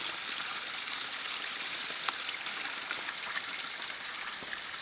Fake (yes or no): no